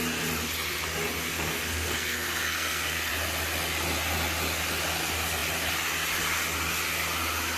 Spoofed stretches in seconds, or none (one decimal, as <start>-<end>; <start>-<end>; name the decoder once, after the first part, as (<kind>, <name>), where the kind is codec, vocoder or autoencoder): 1.3-3.1 (codec, SNAC)